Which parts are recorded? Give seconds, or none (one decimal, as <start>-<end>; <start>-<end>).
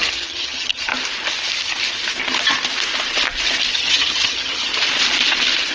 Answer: 0.9-3.7; 4.7-5.7